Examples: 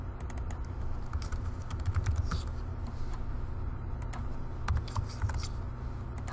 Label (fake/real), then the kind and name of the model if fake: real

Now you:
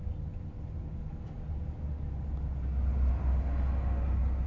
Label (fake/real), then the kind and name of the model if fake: real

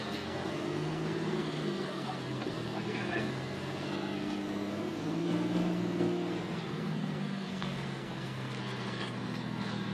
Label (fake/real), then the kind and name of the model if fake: fake, codec, SNAC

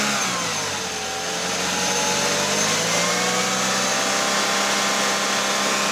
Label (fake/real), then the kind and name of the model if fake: real